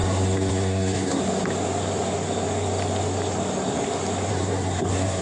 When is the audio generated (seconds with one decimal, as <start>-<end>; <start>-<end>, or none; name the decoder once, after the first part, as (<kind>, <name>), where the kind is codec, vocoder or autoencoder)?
0.0-1.2 (codec, SNAC); 4.3-5.2